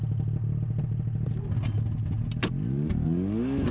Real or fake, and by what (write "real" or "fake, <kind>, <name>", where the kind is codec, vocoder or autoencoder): real